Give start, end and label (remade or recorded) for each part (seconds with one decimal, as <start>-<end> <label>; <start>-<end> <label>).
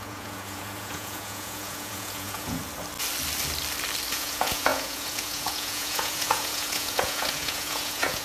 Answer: 0.0-2.6 remade; 2.6-4.1 recorded; 4.1-8.2 remade